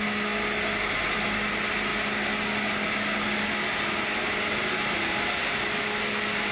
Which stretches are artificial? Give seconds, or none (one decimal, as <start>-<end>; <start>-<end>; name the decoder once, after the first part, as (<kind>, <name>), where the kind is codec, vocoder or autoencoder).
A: none